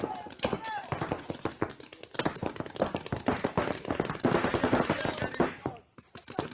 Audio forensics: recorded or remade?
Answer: recorded